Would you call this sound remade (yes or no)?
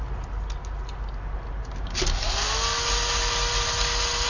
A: no